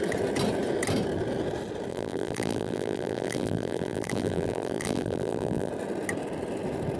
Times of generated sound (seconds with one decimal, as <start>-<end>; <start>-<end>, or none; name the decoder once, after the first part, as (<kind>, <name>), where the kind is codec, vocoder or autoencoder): 1.9-5.7 (vocoder, BigVGAN v2)